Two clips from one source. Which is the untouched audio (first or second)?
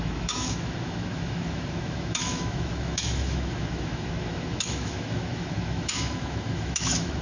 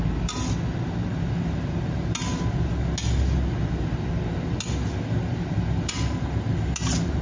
second